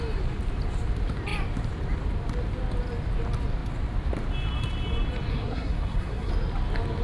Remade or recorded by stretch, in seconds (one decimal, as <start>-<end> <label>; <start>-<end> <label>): 0.0-5.3 recorded; 5.3-6.3 remade; 6.3-7.0 recorded